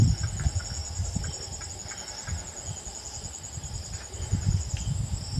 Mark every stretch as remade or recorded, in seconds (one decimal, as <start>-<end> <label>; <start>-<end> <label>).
0.0-0.8 recorded; 0.8-1.7 remade; 1.7-3.6 recorded; 3.6-4.2 remade; 4.2-5.4 recorded